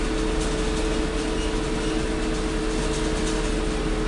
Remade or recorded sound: recorded